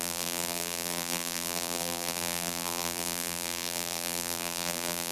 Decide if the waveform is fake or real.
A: fake